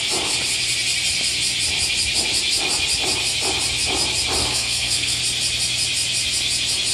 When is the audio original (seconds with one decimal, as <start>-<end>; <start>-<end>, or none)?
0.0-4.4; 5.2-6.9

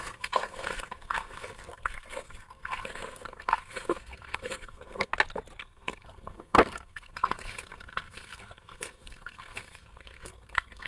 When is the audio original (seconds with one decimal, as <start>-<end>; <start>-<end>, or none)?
5.1-5.6

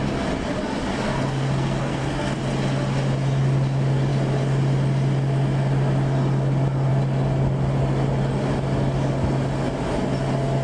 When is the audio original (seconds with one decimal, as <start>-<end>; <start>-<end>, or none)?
0.0-0.9; 2.4-10.6